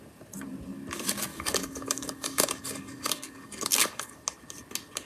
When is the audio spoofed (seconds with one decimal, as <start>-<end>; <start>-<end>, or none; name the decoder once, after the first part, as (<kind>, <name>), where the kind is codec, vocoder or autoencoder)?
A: 1.3-4.1 (codec, DAC)